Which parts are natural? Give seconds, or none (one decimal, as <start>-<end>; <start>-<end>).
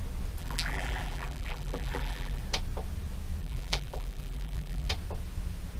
0.0-0.4; 2.4-3.4; 4.9-5.8